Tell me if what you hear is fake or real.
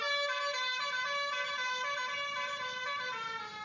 real